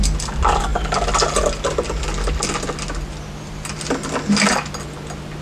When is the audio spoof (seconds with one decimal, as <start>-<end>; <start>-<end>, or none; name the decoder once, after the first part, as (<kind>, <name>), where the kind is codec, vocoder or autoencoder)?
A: none